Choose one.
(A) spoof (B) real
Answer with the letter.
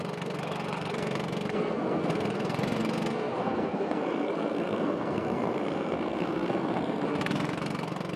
A